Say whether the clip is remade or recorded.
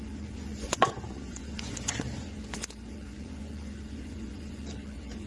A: remade